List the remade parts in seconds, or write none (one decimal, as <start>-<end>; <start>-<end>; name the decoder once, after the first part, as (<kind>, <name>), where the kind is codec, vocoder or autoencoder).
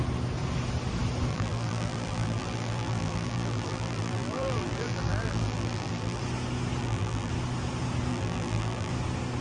1.3-6.2 (vocoder, BigVGAN v2); 6.8-7.3; 8.1-8.9